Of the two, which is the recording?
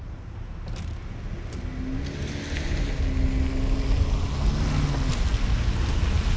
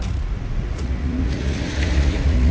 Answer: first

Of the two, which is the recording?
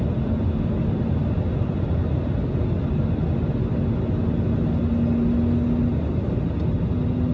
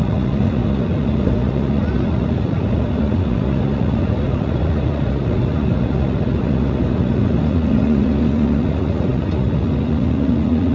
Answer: first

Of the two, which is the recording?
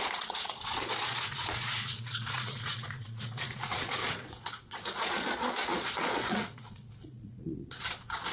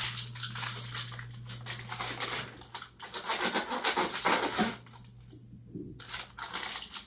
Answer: second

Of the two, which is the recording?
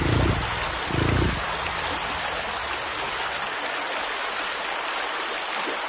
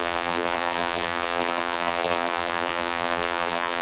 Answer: first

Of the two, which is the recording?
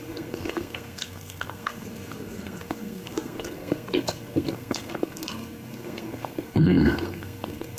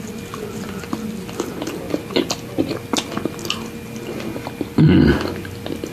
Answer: second